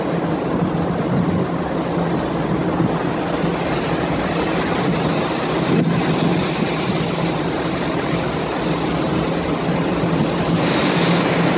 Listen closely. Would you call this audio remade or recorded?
recorded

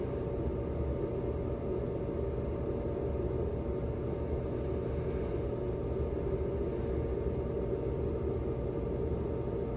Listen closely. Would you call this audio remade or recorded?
recorded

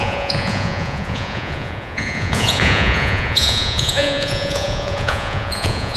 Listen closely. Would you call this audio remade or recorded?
remade